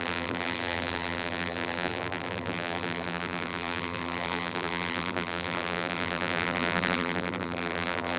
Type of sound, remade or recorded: remade